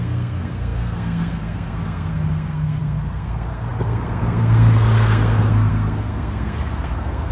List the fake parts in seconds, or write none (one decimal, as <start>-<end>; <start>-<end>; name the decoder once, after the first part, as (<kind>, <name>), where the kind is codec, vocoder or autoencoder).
0.0-7.3 (codec, SNAC)